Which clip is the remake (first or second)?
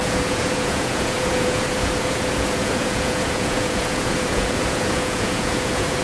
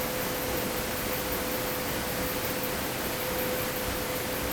first